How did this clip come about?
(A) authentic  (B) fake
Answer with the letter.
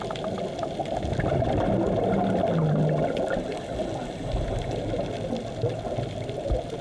A